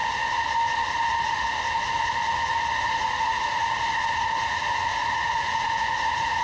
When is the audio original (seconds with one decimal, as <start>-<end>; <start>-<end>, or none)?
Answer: 0.0-2.8; 3.6-4.2